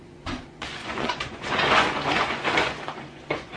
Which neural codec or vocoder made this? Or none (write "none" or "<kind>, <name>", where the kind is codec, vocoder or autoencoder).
vocoder, Vocos